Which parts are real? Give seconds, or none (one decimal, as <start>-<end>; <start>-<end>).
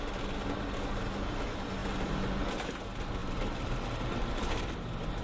0.0-3.2; 4.7-5.2